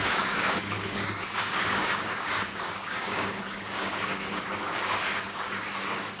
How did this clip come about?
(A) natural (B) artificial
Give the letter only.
B